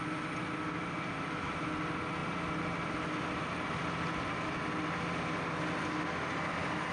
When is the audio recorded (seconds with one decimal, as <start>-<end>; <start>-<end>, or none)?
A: 0.0-6.9